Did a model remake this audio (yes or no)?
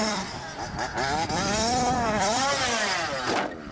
yes